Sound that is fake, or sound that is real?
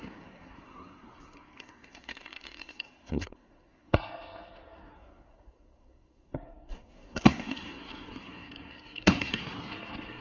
fake